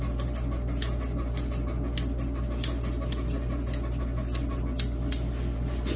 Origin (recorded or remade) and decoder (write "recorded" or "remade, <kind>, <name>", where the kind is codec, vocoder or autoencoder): recorded